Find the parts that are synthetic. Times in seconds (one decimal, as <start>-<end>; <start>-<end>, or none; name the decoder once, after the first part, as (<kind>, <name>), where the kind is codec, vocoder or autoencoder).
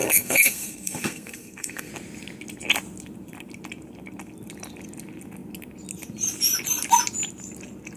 0.0-1.9 (codec, SNAC)